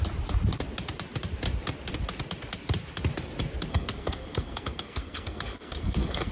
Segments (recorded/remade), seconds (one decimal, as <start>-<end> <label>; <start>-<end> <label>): 0.0-3.7 recorded; 3.7-6.3 remade